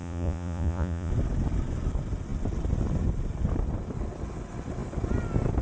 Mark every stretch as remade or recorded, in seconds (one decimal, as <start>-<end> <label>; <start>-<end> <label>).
0.0-1.1 remade; 1.1-5.6 recorded